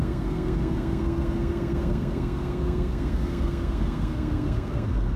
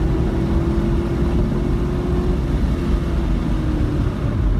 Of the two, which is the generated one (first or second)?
first